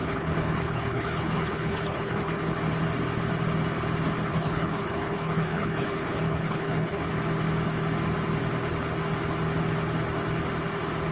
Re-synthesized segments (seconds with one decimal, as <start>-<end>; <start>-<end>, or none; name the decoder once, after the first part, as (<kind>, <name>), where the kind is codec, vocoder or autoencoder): 0.0-2.6 (codec, HILCodec); 4.3-7.1